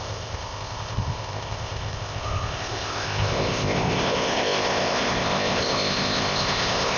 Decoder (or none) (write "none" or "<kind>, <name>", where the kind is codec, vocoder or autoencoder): codec, ZipCodec